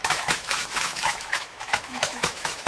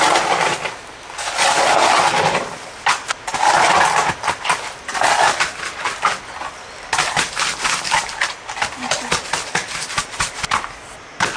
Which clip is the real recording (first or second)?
second